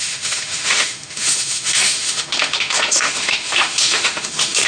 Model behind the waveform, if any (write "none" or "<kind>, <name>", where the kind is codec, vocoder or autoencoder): autoencoder, DAC-VAE